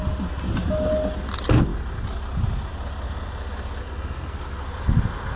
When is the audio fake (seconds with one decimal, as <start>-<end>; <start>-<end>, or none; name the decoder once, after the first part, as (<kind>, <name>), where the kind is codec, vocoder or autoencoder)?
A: 3.8-4.6 (codec, SNAC)